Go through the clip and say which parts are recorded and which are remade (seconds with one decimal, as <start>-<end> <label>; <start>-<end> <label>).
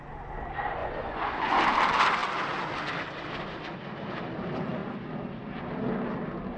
0.0-0.8 recorded; 0.8-1.6 remade; 1.6-6.6 recorded